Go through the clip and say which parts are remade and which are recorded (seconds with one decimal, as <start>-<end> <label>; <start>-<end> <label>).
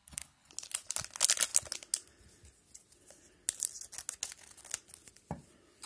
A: 0.0-0.5 remade; 0.5-5.9 recorded